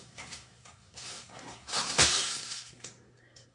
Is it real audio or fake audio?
fake